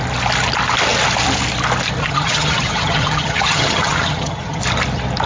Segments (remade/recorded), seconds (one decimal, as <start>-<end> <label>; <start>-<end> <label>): 0.0-2.0 recorded; 2.0-4.6 remade; 4.6-5.3 recorded